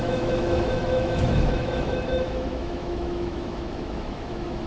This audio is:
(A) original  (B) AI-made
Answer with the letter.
B